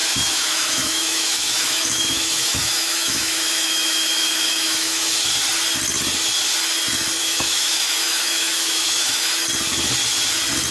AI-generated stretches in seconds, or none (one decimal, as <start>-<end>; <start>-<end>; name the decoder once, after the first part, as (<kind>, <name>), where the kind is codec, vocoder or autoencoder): 0.0-5.3 (autoencoder, DAC-VAE); 7.2-9.3